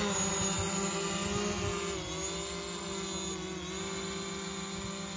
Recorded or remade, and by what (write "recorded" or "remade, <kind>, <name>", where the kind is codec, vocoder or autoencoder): recorded